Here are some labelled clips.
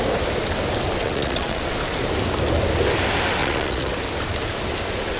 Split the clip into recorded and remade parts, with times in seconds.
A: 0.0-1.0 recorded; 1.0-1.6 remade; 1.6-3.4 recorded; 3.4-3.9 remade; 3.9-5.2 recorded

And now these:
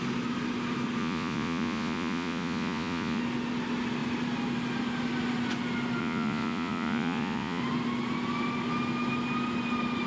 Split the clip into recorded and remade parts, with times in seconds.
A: 0.0-1.0 recorded; 1.0-3.2 remade; 3.2-6.0 recorded; 6.0-7.6 remade; 7.6-10.1 recorded

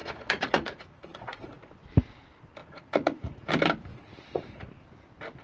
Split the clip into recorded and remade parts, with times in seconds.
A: 0.0-1.7 remade; 1.7-2.6 recorded; 2.6-3.5 remade; 3.5-3.9 recorded; 3.9-4.7 remade; 4.7-5.4 recorded

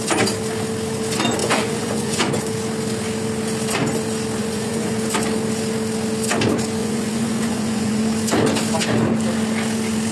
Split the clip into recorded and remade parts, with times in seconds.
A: 0.0-1.4 recorded; 1.4-2.3 remade; 2.3-4.4 recorded; 4.4-4.9 remade; 4.9-6.8 recorded; 6.8-8.0 remade; 8.0-10.1 recorded

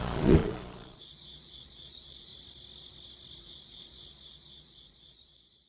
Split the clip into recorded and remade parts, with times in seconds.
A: 0.0-2.3 remade; 2.3-3.4 recorded; 3.4-5.7 remade

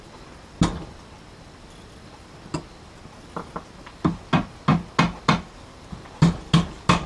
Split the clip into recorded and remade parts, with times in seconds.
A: 0.0-7.1 recorded